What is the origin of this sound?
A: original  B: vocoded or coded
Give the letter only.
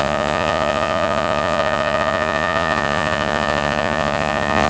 B